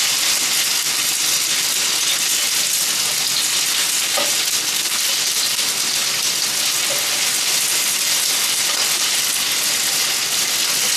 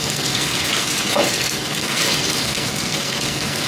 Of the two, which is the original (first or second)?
first